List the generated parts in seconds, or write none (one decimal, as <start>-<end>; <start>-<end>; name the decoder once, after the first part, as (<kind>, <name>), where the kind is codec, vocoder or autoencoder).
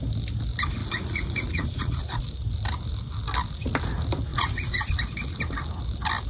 0.8-2.2 (vocoder, Vocos); 4.3-4.9